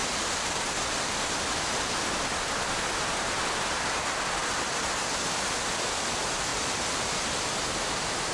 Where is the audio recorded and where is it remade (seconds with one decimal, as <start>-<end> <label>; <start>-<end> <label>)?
0.0-4.4 recorded; 4.4-5.0 remade; 5.0-6.5 recorded; 6.5-7.5 remade; 7.5-8.3 recorded

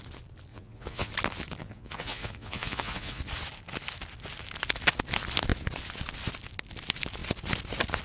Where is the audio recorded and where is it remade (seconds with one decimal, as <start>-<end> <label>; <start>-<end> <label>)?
0.0-0.5 recorded; 0.5-1.1 remade; 1.1-1.6 recorded; 1.6-3.2 remade; 3.2-8.0 recorded

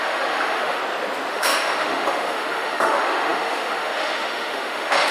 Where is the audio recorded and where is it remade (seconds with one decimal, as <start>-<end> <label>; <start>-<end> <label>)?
0.0-0.8 remade; 0.8-1.3 recorded; 1.3-5.1 remade

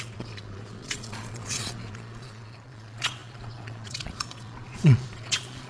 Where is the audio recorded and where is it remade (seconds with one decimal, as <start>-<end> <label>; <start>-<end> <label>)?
0.0-5.7 remade

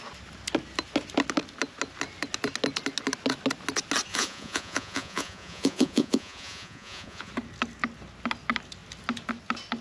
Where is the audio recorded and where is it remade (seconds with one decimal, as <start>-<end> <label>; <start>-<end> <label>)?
0.0-4.1 recorded; 4.1-7.3 remade; 7.3-9.8 recorded